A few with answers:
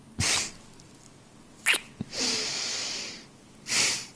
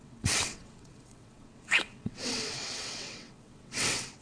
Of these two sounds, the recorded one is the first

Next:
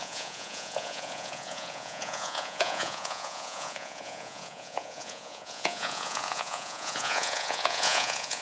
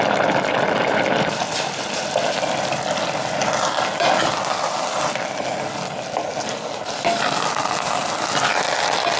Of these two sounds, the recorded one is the second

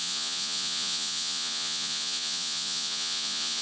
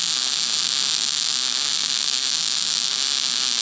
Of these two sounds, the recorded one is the second